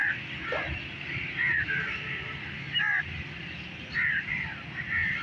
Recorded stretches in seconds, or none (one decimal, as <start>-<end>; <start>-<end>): 0.0-3.0